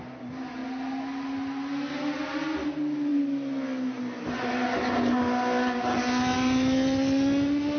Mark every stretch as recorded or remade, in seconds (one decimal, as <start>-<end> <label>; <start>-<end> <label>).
0.0-7.8 recorded